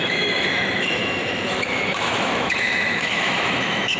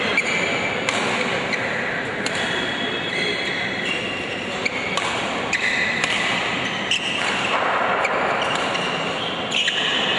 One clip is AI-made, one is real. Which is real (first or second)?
second